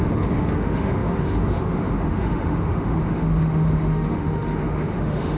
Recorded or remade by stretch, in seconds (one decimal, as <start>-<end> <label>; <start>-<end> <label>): 0.0-5.4 remade